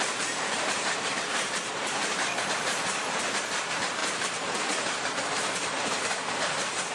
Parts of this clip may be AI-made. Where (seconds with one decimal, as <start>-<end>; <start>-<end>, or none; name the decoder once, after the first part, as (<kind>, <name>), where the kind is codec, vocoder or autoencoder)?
0.0-6.9 (vocoder, BigVGAN v2)